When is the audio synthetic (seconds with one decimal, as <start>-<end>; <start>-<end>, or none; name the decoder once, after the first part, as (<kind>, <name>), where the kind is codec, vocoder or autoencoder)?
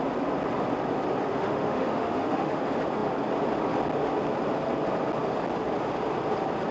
1.3-2.6 (autoencoder, DAC-VAE)